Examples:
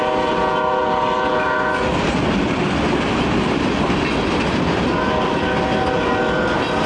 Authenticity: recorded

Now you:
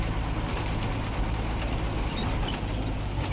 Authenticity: recorded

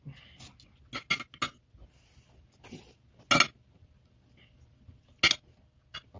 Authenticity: recorded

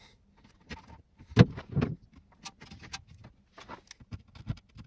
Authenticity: recorded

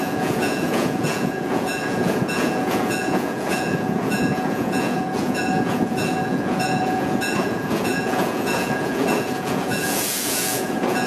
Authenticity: remade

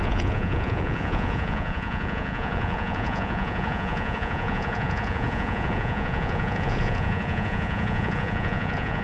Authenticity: remade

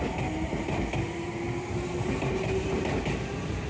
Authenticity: recorded